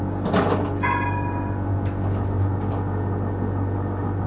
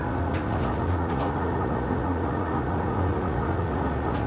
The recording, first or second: first